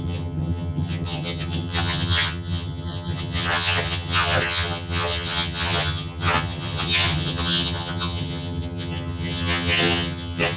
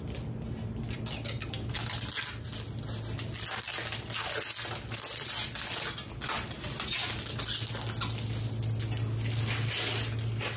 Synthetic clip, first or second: first